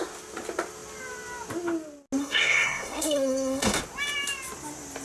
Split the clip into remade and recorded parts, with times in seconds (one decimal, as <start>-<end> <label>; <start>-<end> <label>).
0.0-2.2 recorded; 2.2-3.8 remade; 3.8-5.0 recorded

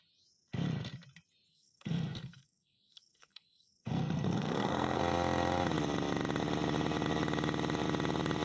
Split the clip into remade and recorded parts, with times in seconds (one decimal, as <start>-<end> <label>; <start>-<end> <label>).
0.0-1.5 recorded; 1.5-5.0 remade; 5.0-8.4 recorded

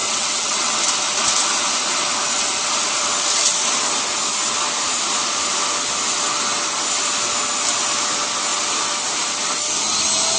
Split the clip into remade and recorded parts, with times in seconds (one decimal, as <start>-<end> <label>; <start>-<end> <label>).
0.0-0.8 remade; 0.8-10.4 recorded

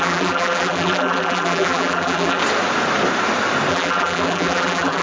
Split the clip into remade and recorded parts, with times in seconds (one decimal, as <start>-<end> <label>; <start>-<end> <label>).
0.0-2.4 remade; 2.4-3.7 recorded; 3.7-5.0 remade

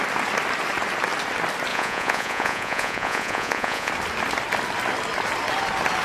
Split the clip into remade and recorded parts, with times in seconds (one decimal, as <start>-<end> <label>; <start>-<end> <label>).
0.0-1.7 recorded; 1.7-3.9 remade; 3.9-6.0 recorded